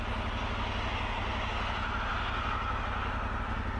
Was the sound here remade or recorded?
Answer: recorded